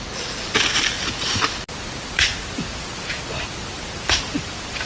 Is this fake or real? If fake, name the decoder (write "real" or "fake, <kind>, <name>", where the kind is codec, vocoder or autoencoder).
real